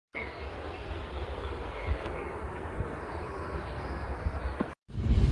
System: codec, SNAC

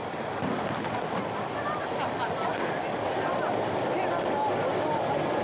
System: none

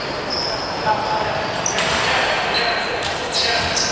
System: none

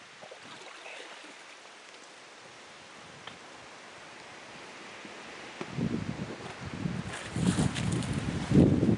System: none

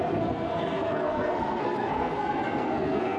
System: codec, SNAC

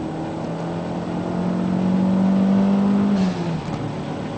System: none